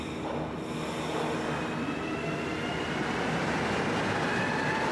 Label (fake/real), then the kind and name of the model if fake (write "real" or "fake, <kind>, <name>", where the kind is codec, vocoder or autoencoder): real